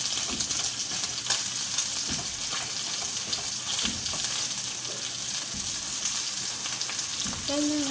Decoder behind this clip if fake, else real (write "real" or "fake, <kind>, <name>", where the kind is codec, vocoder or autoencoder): real